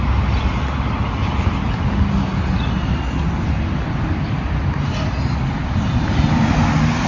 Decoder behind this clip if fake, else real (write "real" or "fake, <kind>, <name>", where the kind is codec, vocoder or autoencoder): real